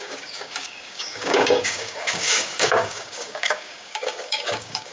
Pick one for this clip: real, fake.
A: fake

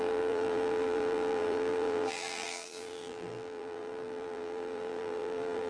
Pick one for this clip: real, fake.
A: fake